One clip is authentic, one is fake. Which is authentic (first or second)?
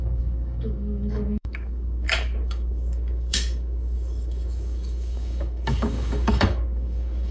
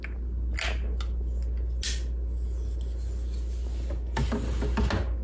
second